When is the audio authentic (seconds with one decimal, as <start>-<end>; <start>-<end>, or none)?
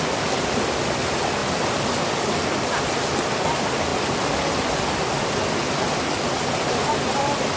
0.0-7.6